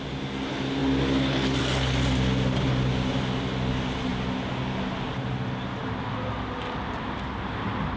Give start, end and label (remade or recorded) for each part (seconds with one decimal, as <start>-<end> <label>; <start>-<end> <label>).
0.0-8.0 recorded